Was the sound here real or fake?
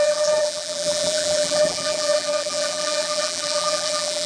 fake